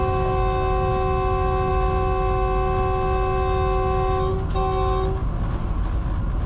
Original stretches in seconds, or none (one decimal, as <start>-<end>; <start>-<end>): 0.0-6.5